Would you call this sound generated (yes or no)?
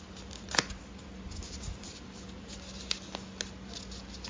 no